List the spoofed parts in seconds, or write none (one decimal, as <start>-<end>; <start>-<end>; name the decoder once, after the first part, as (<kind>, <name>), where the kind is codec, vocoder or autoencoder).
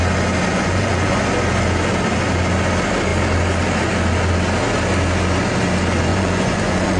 0.5-1.2 (vocoder, Vocos); 6.1-7.0